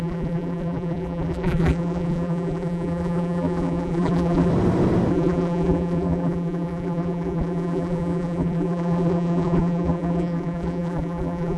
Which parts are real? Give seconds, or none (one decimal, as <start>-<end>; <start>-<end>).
4.5-5.1